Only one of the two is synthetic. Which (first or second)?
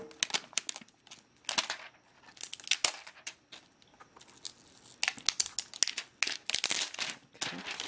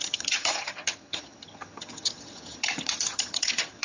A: second